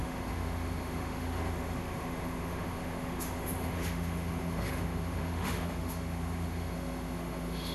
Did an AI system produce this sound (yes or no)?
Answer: yes